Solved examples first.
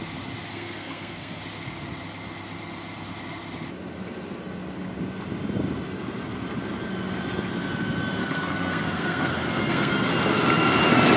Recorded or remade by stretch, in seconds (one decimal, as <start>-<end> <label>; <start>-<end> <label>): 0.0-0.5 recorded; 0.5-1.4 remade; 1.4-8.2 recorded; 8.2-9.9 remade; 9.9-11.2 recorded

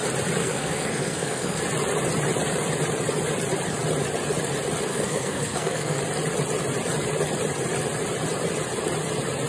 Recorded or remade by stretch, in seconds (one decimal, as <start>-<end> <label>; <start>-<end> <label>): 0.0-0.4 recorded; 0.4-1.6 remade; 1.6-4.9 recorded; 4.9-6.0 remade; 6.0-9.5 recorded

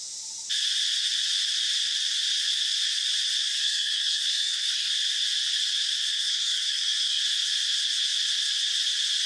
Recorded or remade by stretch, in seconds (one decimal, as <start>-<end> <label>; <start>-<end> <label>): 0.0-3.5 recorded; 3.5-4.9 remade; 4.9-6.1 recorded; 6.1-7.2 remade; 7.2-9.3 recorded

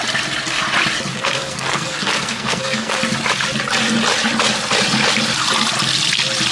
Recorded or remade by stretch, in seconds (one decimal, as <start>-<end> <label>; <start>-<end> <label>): 0.0-1.1 recorded; 1.1-3.0 remade; 3.0-6.5 recorded

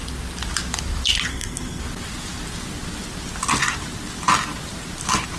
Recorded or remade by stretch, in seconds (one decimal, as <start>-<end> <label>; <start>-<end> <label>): 0.0-1.3 recorded; 1.3-1.8 remade; 1.8-5.4 recorded

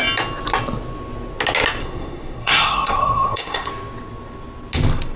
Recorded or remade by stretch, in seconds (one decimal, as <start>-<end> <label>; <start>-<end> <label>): 0.0-1.8 recorded; 1.8-3.7 remade; 3.7-5.2 recorded

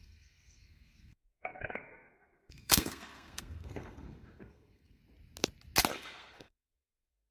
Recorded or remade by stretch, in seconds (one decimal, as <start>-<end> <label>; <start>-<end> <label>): 0.0-5.0 remade; 5.0-5.9 recorded; 5.9-7.3 remade